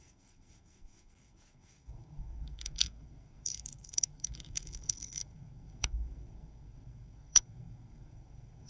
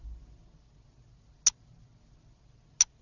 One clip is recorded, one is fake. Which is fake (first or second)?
first